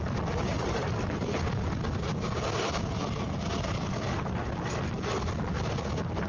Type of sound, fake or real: real